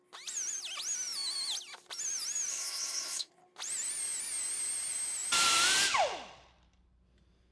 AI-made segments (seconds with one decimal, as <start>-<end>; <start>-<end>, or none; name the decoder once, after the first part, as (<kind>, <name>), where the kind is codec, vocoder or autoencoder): 2.5-3.3 (codec, SNAC)